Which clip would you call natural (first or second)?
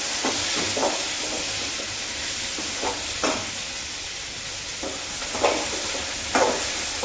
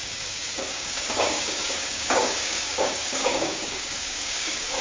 first